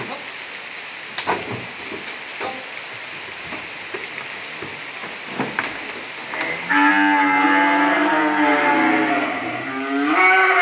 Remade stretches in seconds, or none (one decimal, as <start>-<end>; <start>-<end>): none